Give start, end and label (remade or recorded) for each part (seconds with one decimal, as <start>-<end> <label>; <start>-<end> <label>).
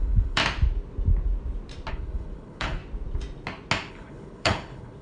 0.0-0.4 remade; 0.4-1.9 recorded; 1.9-2.8 remade; 2.8-3.9 recorded; 3.9-5.0 remade